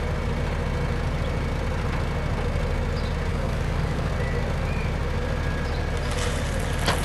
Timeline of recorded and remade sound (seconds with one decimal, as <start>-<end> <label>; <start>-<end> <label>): 0.0-3.3 recorded; 3.3-4.1 remade; 4.1-7.0 recorded